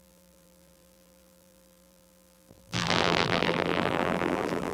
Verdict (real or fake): fake